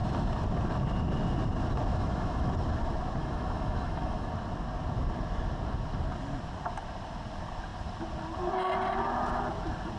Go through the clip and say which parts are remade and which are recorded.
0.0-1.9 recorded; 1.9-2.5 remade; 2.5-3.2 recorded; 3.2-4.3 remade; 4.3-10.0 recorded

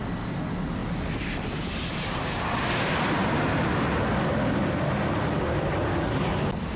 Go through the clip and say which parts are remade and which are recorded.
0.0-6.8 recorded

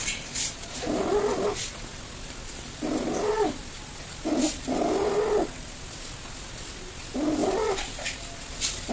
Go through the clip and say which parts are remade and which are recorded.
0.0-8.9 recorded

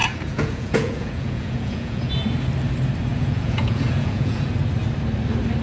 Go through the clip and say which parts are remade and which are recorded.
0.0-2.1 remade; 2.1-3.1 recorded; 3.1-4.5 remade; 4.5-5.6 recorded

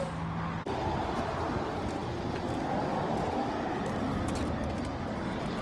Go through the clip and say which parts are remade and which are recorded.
0.0-5.6 recorded

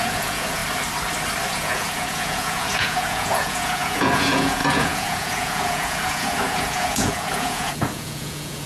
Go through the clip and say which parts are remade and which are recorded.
0.0-0.6 remade; 0.6-1.5 recorded; 1.5-8.7 remade

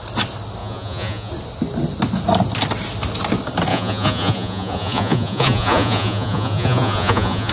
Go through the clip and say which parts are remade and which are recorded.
0.0-0.6 recorded; 0.6-1.3 remade; 1.3-3.7 recorded; 3.7-7.5 remade